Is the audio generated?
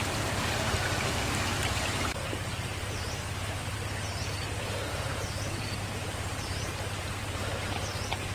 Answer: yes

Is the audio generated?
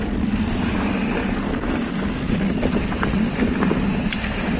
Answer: no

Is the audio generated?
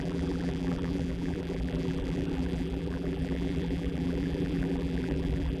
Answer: yes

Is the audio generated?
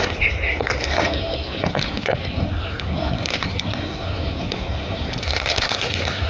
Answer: yes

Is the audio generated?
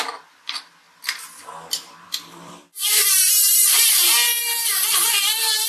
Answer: yes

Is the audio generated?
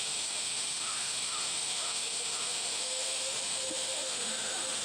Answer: yes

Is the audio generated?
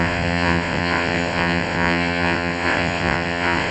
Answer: yes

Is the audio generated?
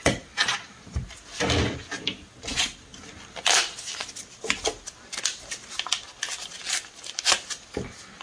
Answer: no